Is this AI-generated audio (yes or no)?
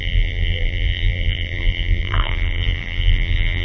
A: yes